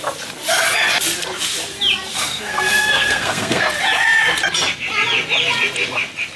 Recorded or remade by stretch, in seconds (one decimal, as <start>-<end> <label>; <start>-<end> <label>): 0.0-2.1 recorded; 2.1-3.6 remade; 3.6-6.4 recorded